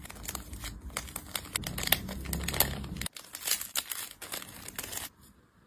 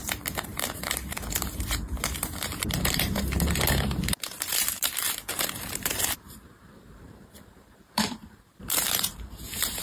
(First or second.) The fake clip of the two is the second